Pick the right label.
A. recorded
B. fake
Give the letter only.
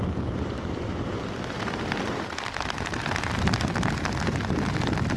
A